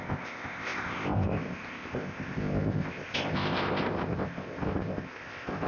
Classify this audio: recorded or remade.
remade